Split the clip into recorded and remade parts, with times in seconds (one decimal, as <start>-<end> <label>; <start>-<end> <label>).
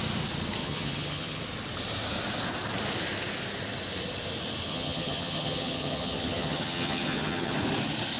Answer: 0.0-0.6 recorded; 0.6-1.4 remade; 1.4-4.7 recorded; 4.7-7.6 remade; 7.6-8.2 recorded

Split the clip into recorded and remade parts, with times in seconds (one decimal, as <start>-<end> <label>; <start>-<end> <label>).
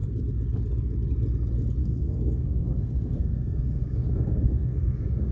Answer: 0.0-1.8 recorded; 1.8-5.3 remade